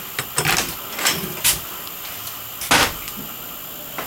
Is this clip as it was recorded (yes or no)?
yes